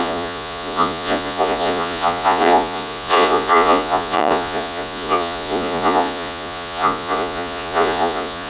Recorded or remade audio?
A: remade